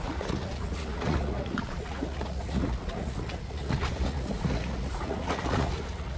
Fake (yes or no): yes